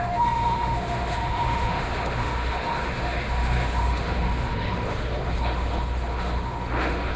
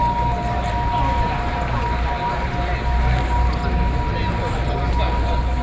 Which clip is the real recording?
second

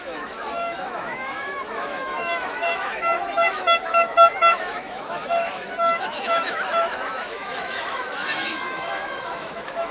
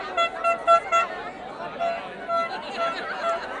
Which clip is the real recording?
second